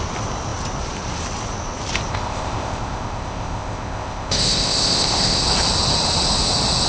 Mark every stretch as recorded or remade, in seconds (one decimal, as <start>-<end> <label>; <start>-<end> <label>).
0.0-2.1 recorded; 2.1-5.4 remade; 5.4-6.9 recorded